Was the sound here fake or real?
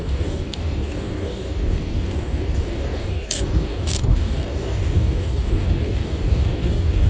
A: fake